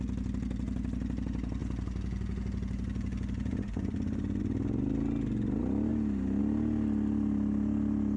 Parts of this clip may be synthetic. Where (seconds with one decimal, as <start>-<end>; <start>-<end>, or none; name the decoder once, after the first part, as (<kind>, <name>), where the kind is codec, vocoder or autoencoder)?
none